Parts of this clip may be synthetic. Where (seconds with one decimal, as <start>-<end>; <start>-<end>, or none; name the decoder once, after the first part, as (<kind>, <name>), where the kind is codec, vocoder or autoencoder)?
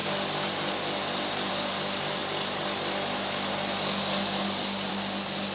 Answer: none